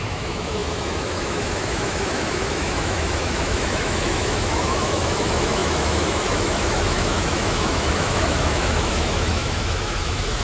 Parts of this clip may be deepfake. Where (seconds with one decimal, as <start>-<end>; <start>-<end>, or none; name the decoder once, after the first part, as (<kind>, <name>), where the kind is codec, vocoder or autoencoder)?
0.0-10.4 (autoencoder, DAC-VAE)